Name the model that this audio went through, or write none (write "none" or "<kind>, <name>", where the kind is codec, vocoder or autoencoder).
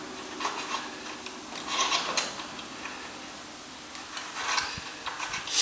none